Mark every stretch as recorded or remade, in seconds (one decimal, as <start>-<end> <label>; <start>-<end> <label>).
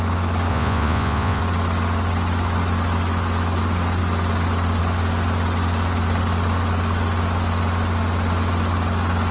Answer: 0.0-0.5 recorded; 0.5-1.4 remade; 1.4-9.3 recorded